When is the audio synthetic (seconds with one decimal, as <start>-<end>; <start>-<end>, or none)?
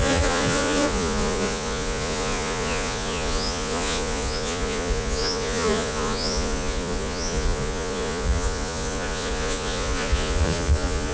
0.0-11.1